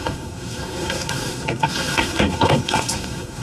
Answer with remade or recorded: remade